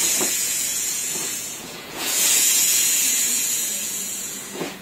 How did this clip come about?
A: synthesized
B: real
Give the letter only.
A